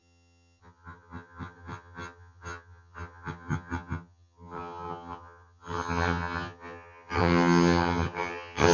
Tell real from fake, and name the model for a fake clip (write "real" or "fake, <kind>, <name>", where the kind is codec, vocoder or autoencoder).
fake, vocoder, HiFi-GAN